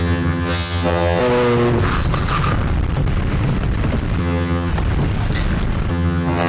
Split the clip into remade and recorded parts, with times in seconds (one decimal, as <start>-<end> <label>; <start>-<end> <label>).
0.0-1.2 remade; 1.2-4.2 recorded; 4.2-4.7 remade; 4.7-5.9 recorded; 5.9-6.5 remade